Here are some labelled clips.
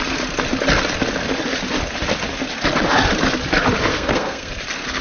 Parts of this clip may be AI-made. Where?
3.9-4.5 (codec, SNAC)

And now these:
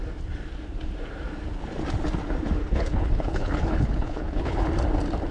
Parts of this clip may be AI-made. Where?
2.6-4.7 (codec, HILCodec)

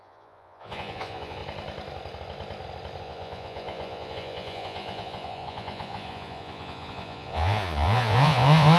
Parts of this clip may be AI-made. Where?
0.0-1.4 (vocoder, Vocos); 3.0-8.8